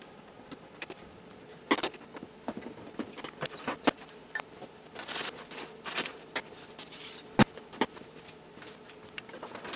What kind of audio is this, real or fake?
real